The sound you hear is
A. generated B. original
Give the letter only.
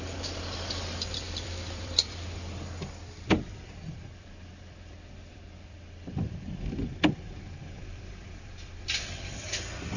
A